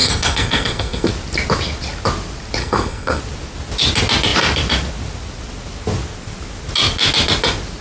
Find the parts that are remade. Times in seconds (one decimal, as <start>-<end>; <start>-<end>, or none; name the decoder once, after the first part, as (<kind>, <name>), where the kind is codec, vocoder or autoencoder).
0.0-1.1 (codec, SNAC); 2.6-3.2